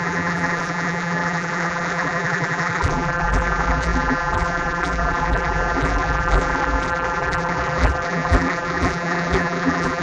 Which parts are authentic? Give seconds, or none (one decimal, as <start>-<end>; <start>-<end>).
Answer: none